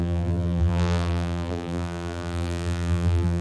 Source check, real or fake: fake